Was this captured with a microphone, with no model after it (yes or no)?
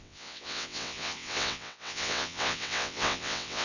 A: no